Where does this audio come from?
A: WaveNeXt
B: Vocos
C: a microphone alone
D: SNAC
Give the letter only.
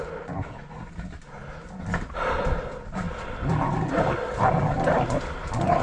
C